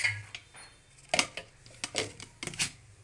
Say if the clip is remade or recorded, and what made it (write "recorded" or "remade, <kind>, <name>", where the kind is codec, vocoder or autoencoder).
recorded